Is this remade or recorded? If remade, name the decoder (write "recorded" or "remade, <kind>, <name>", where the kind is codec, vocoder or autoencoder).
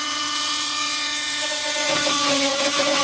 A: remade, vocoder, WaveNeXt